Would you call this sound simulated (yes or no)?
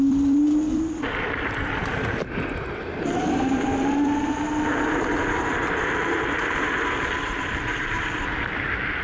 yes